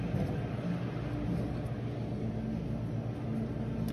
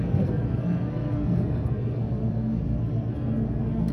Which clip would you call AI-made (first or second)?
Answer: second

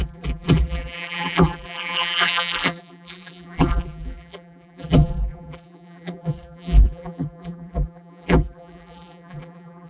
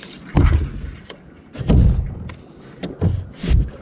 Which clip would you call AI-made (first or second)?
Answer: first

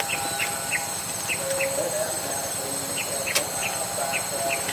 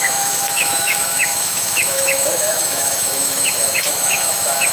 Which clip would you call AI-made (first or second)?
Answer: second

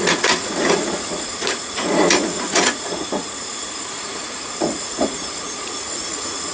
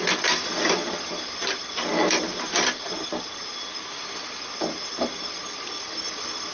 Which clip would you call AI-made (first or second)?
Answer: first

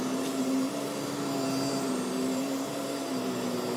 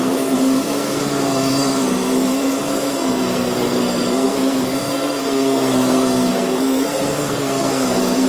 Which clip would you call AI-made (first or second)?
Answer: second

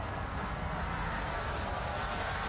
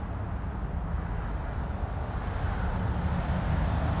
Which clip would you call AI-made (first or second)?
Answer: first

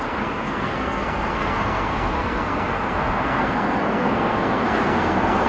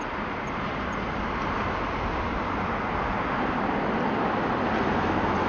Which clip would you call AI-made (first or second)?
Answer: first